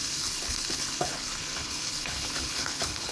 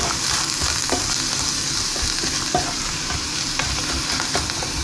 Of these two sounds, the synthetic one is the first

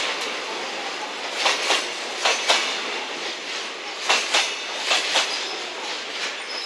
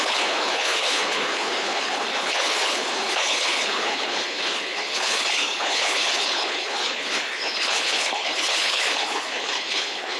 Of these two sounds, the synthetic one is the second